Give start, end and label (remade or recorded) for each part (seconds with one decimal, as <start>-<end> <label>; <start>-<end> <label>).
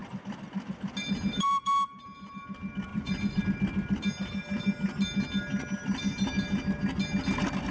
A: 0.0-2.9 recorded; 2.9-3.4 remade; 3.4-7.7 recorded